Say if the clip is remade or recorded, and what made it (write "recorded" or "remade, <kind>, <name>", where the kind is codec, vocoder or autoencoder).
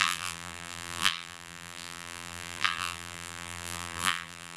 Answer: remade, vocoder, BigVGAN v2